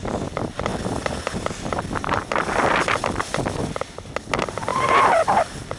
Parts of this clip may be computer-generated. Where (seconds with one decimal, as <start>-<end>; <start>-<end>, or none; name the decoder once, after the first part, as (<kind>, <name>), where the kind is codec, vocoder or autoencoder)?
4.7-5.3 (vocoder, BigVGAN v2)